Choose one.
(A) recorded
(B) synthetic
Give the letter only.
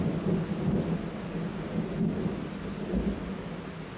A